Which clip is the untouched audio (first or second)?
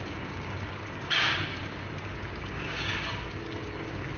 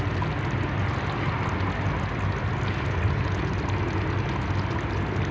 second